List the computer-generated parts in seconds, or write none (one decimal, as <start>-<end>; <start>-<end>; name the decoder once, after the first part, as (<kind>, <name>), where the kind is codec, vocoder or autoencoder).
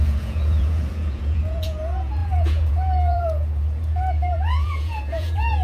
0.0-5.6 (vocoder, Vocos)